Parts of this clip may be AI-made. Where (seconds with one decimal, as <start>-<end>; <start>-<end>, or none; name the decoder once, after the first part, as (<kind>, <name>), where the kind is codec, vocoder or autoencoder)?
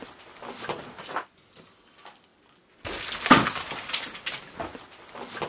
none